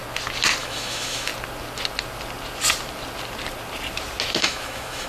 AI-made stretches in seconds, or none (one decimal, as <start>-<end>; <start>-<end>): 0.6-1.3; 4.4-5.1